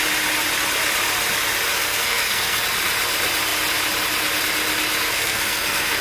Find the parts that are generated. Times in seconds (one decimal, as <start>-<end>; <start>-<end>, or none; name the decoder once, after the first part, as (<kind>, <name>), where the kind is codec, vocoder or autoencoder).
1.7-2.6 (codec, SNAC); 5.0-6.0